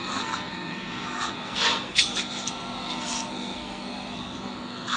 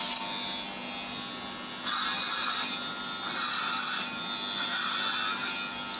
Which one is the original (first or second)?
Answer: second